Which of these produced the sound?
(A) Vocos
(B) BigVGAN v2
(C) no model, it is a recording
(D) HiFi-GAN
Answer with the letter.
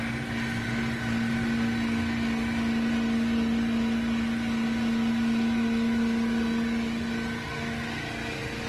C